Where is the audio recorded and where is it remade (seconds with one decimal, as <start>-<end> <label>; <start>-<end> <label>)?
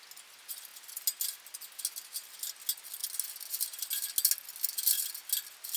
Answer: 0.0-5.8 recorded